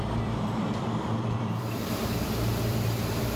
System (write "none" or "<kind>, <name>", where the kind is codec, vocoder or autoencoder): vocoder, BigVGAN v2